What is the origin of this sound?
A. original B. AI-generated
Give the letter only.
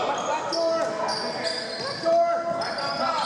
A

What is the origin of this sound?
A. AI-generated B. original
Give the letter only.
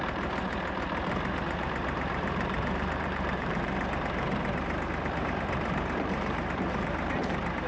A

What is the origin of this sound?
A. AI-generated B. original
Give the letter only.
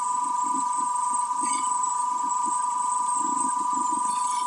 A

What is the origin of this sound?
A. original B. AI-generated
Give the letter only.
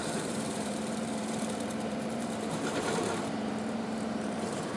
B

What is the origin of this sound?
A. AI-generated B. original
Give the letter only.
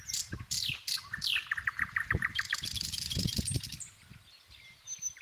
A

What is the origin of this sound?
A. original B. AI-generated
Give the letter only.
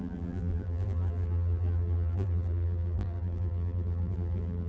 B